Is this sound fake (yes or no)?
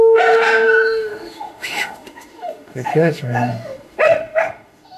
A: yes